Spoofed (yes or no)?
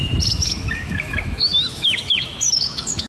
yes